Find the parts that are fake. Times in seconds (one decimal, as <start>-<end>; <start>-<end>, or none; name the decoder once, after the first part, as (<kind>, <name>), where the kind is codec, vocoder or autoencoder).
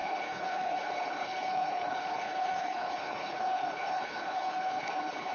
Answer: 0.0-5.3 (codec, HILCodec)